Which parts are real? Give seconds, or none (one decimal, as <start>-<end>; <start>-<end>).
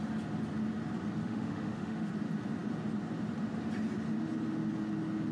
0.0-1.2; 2.1-5.3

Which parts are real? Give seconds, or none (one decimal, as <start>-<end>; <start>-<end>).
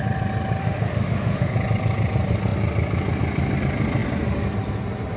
0.0-0.6; 1.5-5.2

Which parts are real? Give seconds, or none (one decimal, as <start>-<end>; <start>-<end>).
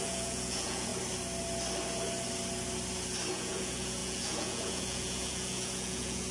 0.9-3.3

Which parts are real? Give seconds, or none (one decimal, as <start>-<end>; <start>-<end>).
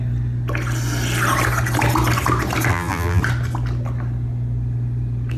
0.0-2.7; 3.2-5.4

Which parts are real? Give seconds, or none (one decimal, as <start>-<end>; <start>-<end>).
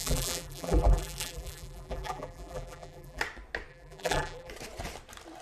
3.2-3.7; 4.5-5.4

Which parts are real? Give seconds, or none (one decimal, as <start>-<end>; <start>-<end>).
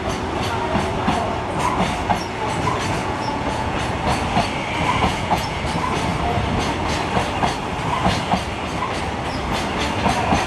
0.0-3.0; 3.8-5.0; 5.6-10.5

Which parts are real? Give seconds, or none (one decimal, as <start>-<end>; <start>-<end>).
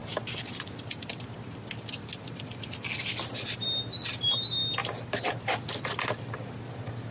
0.0-7.1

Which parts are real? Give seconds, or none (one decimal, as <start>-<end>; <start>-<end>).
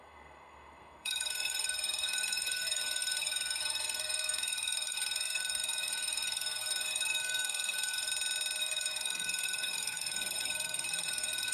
8.1-8.6